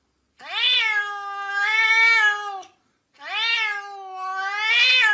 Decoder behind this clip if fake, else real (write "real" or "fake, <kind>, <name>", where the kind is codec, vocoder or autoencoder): real